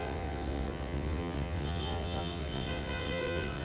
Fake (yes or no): yes